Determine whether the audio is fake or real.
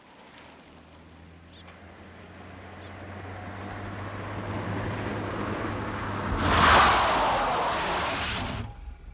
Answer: real